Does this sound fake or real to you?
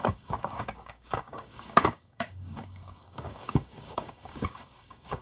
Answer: fake